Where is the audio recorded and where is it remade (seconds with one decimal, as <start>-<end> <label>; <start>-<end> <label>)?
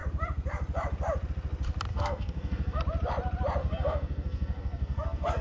0.0-1.9 recorded; 1.9-2.8 remade; 2.8-3.6 recorded; 3.6-5.4 remade